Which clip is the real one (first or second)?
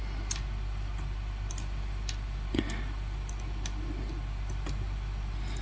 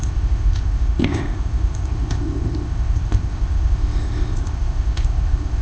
first